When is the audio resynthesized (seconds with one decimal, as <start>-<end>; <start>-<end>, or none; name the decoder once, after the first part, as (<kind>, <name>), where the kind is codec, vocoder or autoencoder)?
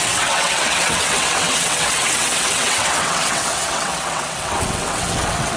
0.0-5.6 (vocoder, WaveNeXt)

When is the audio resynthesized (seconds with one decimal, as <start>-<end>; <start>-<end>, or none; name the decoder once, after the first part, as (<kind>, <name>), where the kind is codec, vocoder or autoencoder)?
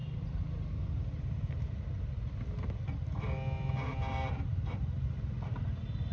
0.0-1.6 (vocoder, BigVGAN v2); 4.1-5.1